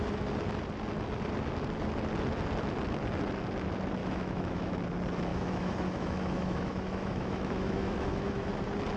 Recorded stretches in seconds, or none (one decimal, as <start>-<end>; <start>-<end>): 0.0-4.0; 4.8-5.3; 8.5-9.0

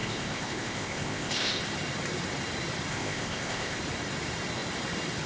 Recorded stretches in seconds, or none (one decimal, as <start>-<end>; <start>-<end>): 1.6-2.9; 3.8-5.3

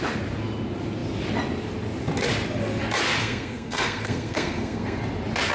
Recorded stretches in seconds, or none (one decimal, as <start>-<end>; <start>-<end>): 0.0-3.2; 5.0-5.5

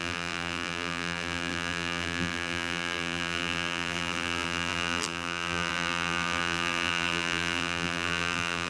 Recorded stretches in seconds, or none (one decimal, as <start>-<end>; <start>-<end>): none

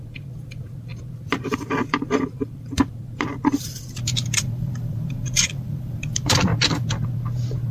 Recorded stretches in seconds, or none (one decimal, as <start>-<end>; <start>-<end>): 6.5-7.7